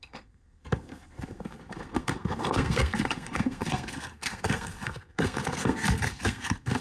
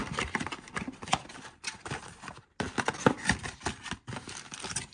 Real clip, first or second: second